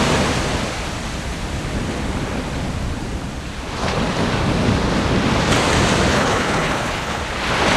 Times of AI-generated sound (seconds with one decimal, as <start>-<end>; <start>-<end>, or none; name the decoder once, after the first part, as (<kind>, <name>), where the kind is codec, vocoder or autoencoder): 6.1-7.2 (codec, HILCodec)